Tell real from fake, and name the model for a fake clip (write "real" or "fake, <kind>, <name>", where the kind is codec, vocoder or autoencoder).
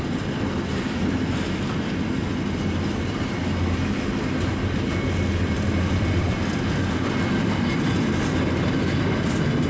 real